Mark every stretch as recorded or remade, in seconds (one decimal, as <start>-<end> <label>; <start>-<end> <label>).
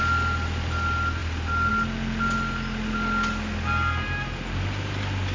0.0-5.3 recorded